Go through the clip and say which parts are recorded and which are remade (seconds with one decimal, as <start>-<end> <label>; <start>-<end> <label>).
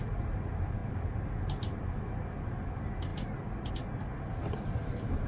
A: 0.0-5.3 recorded